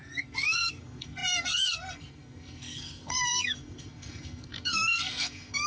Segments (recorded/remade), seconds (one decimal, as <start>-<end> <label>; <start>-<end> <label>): 0.0-5.7 remade